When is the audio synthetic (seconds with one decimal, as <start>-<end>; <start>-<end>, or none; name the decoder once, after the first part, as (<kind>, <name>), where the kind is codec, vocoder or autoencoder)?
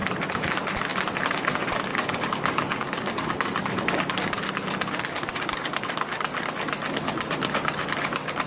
1.9-3.9 (codec, DAC)